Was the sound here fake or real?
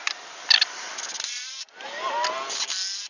real